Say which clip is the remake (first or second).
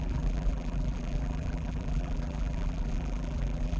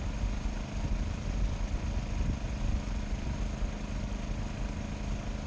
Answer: first